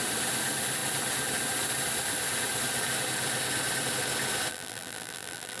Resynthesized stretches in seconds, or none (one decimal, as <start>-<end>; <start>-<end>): 4.5-5.6